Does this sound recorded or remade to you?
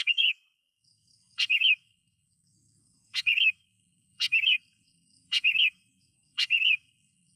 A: remade